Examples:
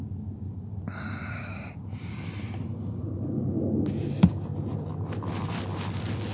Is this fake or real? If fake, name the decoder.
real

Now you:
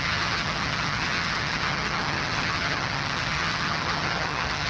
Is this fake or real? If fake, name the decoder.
fake, vocoder, HiFi-GAN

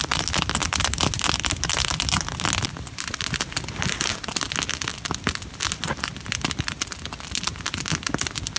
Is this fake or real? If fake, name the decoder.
real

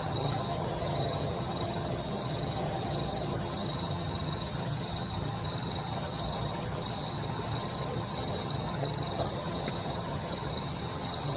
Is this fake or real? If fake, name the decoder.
fake, vocoder, HiFi-GAN